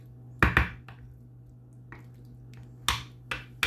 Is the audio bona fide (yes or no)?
yes